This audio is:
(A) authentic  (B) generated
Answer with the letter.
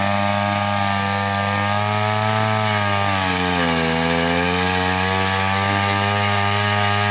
A